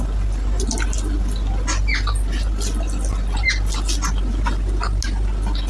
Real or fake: real